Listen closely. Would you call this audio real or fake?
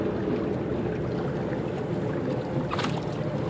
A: real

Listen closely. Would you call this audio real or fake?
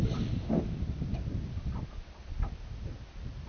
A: real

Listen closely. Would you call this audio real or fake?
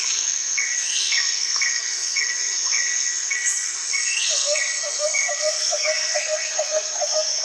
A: fake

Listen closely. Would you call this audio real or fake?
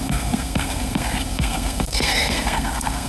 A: fake